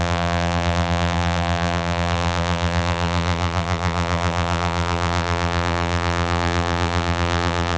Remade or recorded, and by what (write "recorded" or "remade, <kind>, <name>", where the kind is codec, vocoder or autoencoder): remade, vocoder, BigVGAN v2